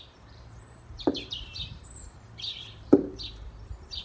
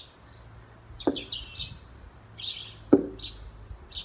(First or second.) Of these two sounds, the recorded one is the second